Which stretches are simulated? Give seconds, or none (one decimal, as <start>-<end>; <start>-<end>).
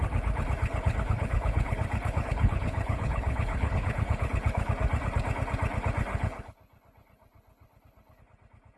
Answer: 0.6-4.7; 6.1-8.2